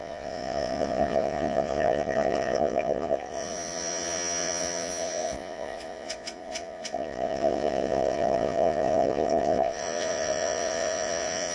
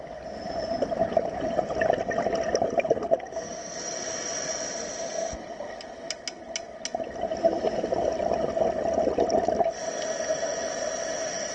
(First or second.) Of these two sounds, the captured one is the second